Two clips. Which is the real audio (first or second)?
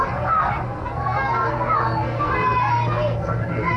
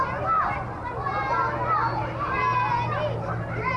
second